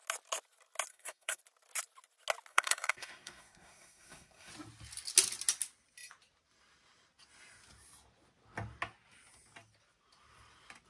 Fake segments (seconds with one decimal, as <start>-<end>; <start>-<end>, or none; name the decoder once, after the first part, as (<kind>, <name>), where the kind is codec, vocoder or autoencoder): 0.9-1.4 (codec, SNAC); 2.5-4.5